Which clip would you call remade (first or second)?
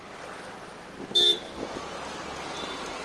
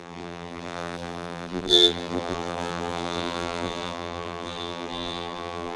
second